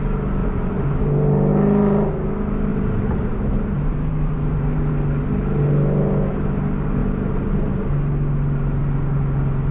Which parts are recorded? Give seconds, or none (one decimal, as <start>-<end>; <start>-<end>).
0.0-0.4; 1.0-2.7; 4.9-9.7